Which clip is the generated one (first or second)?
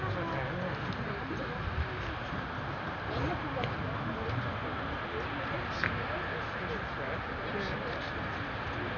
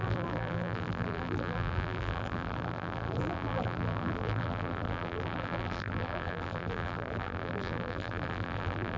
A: second